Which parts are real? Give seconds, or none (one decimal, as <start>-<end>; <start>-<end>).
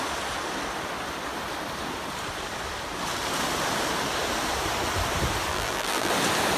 0.0-5.5; 6.1-6.6